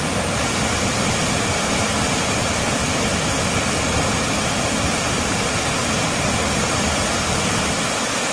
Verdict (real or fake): real